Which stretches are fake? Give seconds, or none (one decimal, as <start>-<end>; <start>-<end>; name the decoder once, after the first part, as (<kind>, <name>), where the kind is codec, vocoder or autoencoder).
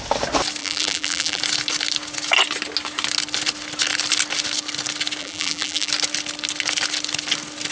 0.6-1.4 (vocoder, BigVGAN v2); 5.2-5.9